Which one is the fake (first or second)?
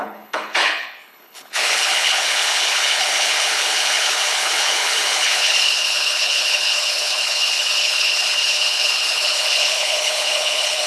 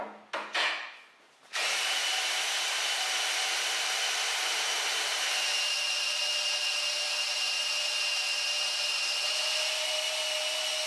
first